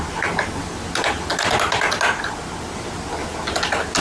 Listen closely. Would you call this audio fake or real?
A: real